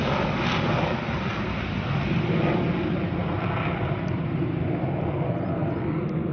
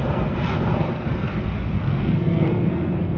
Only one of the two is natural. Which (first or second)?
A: first